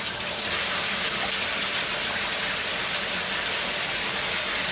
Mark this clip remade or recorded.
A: recorded